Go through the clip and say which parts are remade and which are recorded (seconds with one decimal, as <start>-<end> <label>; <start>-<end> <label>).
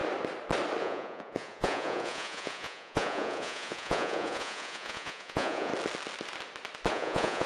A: 0.0-0.8 recorded; 0.8-5.7 remade; 5.7-6.9 recorded; 6.9-7.5 remade